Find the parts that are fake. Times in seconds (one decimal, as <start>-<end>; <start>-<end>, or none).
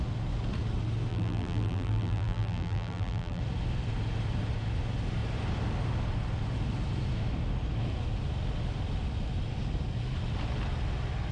1.1-3.4